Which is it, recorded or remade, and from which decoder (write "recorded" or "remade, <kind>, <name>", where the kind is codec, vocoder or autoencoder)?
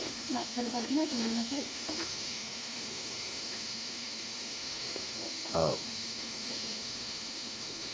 remade, autoencoder, DAC-VAE